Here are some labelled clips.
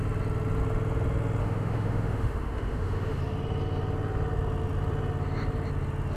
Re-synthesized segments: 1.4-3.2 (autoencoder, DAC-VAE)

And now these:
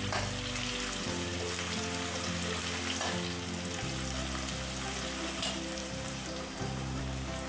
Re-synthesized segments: 5.8-7.0 (vocoder, BigVGAN v2)